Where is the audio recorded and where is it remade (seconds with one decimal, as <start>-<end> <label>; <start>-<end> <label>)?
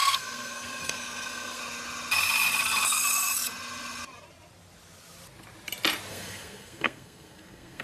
0.0-1.6 remade; 1.6-6.1 recorded; 6.1-7.8 remade